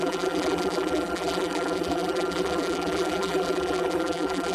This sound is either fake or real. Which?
fake